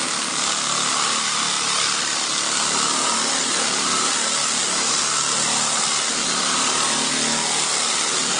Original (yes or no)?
yes